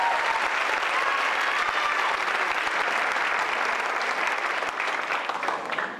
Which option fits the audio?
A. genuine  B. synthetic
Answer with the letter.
A